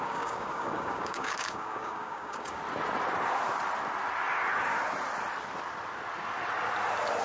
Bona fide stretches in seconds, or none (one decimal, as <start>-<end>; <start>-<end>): 2.6-7.2